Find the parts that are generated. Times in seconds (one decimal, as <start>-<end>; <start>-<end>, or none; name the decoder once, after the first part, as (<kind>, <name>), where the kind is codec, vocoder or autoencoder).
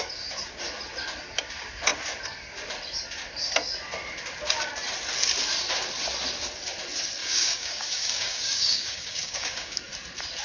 7.2-9.8 (codec, DAC)